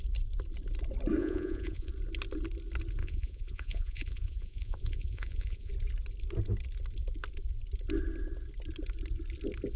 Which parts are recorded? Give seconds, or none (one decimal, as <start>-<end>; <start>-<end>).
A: 0.0-1.2; 1.9-3.0; 5.7-9.8